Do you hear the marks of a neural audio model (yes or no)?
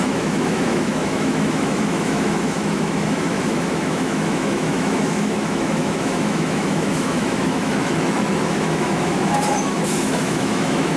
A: yes